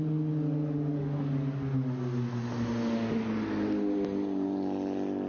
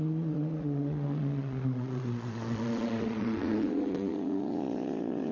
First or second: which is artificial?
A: second